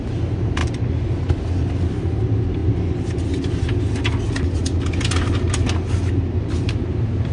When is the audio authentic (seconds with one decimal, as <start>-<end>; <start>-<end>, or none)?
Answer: 0.0-7.3